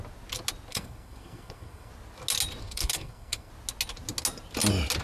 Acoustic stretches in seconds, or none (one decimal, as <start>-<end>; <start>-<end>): 0.0-0.7; 1.9-2.6; 3.5-5.0

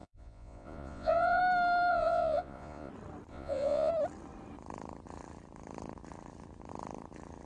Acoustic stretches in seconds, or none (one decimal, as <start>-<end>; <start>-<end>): 1.4-1.9; 2.9-3.3; 3.9-7.5

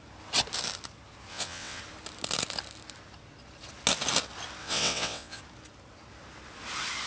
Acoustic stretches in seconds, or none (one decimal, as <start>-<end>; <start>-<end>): 0.0-1.3; 1.8-4.6; 5.4-7.1